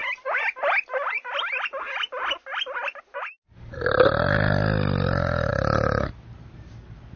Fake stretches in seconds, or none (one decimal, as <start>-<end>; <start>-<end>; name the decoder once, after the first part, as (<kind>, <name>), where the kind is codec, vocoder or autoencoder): none